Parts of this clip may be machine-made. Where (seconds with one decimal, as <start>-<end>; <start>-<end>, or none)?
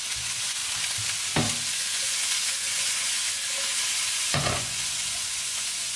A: 0.0-0.6; 1.7-3.2; 3.8-6.0